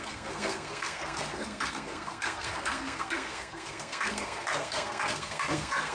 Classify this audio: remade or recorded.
remade